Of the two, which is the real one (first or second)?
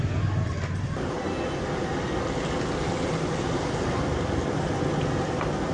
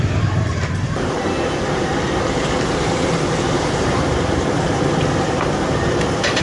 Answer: first